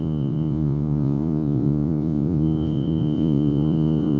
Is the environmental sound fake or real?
fake